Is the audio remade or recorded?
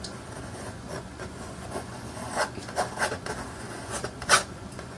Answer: remade